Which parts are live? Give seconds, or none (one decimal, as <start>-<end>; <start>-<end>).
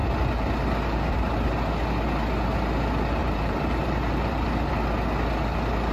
0.0-3.2; 4.7-5.9